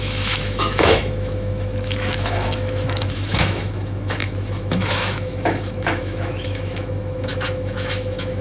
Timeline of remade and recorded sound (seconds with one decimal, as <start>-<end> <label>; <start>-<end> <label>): 0.0-8.4 remade